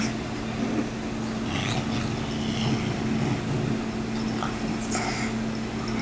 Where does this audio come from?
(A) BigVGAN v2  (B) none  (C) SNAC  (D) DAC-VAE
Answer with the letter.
A